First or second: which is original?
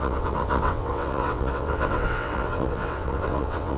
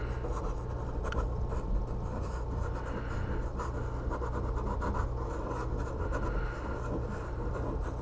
second